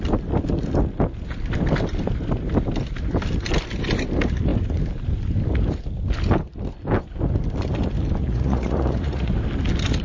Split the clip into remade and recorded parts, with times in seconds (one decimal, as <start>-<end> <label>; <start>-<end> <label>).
0.0-8.2 recorded; 8.2-9.3 remade; 9.3-10.0 recorded